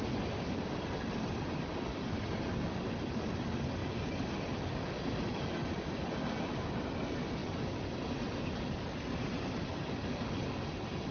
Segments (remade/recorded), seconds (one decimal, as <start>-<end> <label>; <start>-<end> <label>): 0.0-3.8 recorded; 3.8-4.7 remade; 4.7-7.4 recorded; 7.4-8.3 remade; 8.3-11.1 recorded